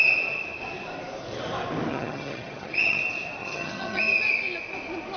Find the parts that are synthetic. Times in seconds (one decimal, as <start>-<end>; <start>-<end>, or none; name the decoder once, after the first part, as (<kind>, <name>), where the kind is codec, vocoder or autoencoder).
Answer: 1.9-3.0 (vocoder, HiFi-GAN); 3.4-4.0

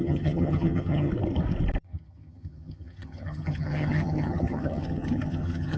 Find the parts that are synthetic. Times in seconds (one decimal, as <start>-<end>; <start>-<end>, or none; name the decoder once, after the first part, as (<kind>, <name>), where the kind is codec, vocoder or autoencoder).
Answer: 0.0-1.1 (vocoder, HiFi-GAN); 1.8-5.8

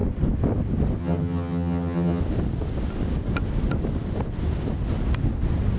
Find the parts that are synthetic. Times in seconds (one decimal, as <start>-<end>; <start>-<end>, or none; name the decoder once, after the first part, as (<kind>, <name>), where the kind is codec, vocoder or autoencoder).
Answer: 1.0-2.2 (vocoder, HiFi-GAN)

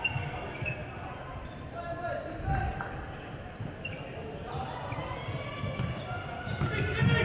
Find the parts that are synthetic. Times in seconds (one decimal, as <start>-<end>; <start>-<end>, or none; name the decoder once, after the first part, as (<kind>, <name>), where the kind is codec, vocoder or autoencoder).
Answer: none